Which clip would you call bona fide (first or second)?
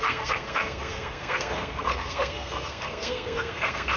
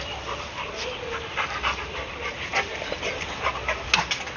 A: second